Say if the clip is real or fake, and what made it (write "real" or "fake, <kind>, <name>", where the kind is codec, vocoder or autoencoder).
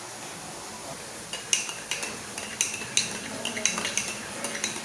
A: real